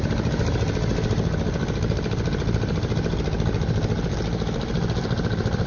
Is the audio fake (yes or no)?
no